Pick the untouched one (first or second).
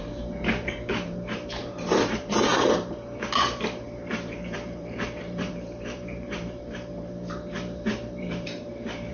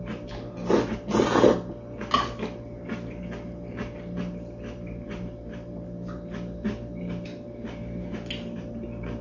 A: second